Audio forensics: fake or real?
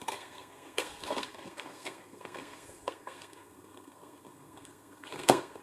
fake